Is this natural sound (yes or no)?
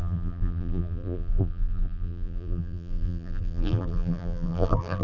no